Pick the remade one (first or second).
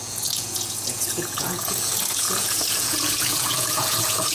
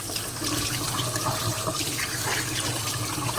first